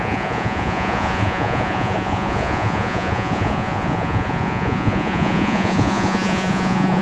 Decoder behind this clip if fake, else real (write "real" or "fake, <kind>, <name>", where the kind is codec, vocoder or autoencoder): fake, vocoder, Vocos